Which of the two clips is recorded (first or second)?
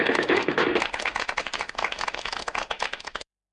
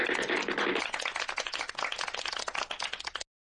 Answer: second